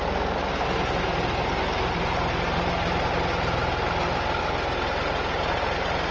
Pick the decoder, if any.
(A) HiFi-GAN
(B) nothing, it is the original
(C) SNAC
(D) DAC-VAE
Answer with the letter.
B